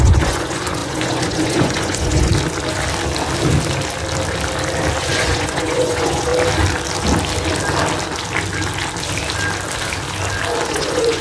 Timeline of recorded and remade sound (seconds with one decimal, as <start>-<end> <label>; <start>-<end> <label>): 0.0-2.3 remade; 2.3-5.0 recorded; 5.0-6.3 remade; 6.3-10.7 recorded; 10.7-11.2 remade